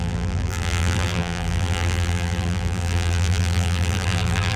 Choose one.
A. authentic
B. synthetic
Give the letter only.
B